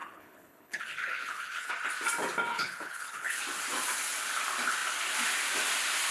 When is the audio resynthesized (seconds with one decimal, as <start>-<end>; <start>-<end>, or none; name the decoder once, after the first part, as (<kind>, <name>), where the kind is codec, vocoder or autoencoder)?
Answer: 0.0-1.7 (codec, HILCodec); 2.5-3.4